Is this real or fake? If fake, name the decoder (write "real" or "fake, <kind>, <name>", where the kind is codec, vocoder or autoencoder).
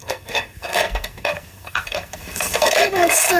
fake, codec, SNAC